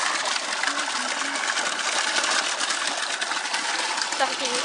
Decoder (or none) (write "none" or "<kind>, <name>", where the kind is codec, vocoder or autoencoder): none